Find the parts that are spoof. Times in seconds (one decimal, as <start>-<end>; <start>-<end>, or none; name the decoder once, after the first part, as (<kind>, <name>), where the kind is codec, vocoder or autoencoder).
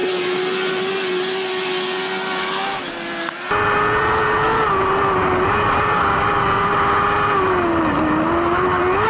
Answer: none